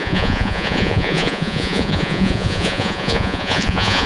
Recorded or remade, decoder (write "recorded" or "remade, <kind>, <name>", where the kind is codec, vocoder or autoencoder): remade, vocoder, Vocos